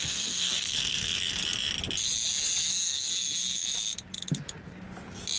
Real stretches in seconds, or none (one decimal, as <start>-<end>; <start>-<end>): 1.4-2.7; 3.1-5.4